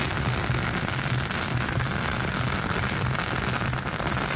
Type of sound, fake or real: real